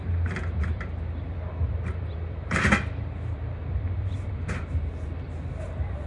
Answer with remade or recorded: remade